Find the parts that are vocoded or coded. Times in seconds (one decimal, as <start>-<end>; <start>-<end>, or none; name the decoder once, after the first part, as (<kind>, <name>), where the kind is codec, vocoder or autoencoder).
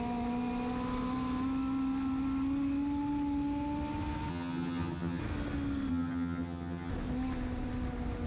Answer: 4.3-5.2 (vocoder, HiFi-GAN); 5.9-6.9